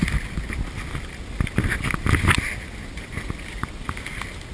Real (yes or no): yes